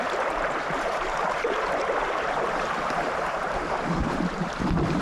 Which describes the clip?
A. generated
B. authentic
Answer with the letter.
A